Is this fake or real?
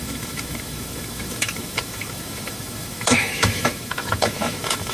fake